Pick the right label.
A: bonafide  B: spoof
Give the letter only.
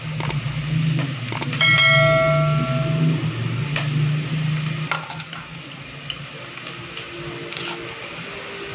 A